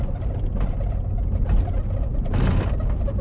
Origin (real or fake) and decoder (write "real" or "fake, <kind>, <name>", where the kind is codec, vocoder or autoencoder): real